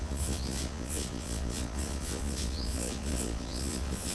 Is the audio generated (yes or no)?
yes